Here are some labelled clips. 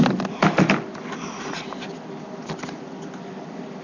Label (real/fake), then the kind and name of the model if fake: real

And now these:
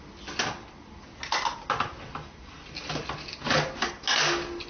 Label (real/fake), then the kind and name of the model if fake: real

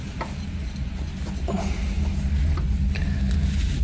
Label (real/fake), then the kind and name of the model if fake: real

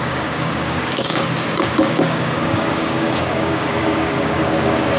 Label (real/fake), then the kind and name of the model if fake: fake, codec, DAC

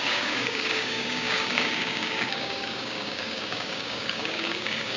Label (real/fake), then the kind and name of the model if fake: fake, codec, DAC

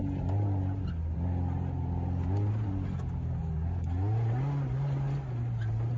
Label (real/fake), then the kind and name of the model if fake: real